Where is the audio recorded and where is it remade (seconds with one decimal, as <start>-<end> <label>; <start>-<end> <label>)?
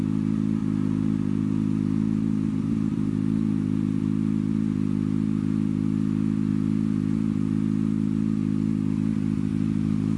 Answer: 0.0-0.6 recorded; 0.6-4.0 remade; 4.0-9.5 recorded; 9.5-10.2 remade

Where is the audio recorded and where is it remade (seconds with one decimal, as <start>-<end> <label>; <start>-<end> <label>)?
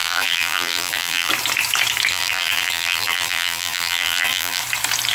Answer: 0.0-1.3 remade; 1.3-2.1 recorded; 2.1-4.6 remade; 4.6-5.1 recorded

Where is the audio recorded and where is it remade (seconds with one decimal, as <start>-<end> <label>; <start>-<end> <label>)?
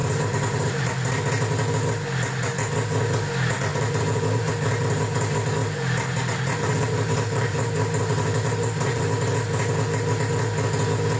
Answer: 0.0-0.8 remade; 0.8-3.7 recorded; 3.7-4.5 remade; 4.5-5.6 recorded; 5.6-9.0 remade; 9.0-11.2 recorded